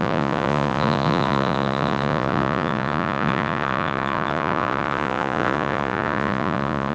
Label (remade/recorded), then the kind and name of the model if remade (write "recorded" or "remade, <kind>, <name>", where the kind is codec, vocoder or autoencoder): remade, vocoder, Vocos